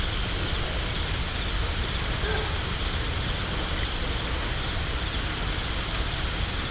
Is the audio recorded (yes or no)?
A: yes